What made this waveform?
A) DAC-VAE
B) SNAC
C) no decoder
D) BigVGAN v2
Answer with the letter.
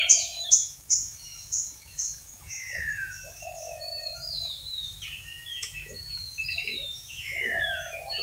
A